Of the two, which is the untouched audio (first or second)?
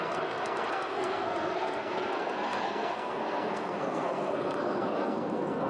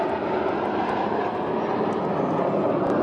second